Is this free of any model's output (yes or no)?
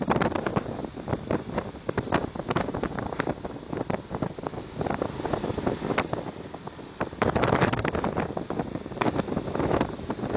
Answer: yes